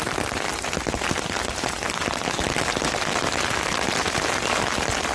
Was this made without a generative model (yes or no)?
yes